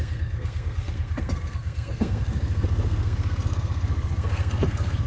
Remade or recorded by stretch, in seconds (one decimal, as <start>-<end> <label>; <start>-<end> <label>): 0.0-5.1 remade